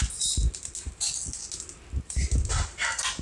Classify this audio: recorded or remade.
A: recorded